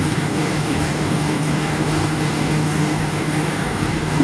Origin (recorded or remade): remade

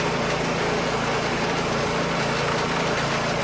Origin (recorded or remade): recorded